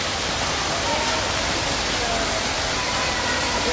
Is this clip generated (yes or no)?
no